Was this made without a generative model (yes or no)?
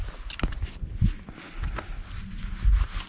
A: yes